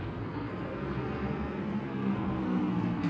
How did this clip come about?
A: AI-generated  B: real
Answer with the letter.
A